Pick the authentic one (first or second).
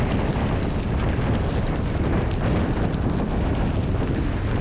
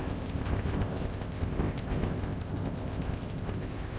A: first